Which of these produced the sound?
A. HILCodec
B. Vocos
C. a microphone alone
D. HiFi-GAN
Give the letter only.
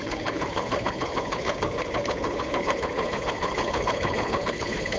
A